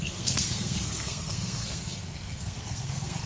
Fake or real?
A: fake